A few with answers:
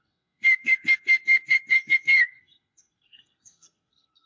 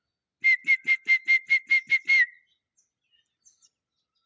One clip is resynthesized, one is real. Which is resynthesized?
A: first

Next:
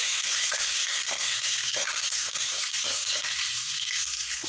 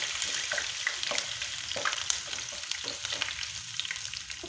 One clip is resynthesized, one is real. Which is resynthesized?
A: first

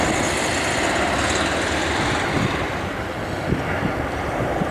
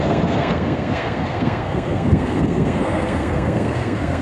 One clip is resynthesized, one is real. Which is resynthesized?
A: second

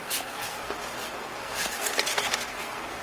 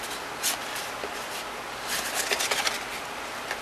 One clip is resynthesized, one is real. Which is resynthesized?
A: first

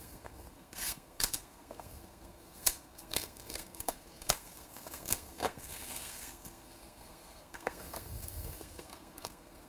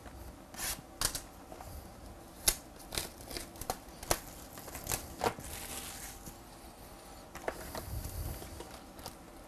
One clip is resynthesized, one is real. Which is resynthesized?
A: first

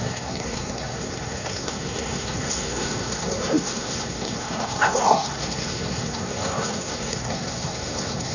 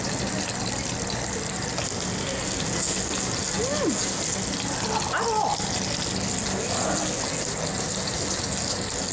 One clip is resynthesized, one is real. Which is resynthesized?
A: first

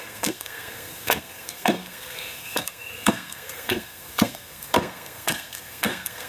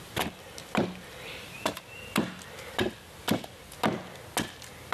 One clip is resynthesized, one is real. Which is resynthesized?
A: first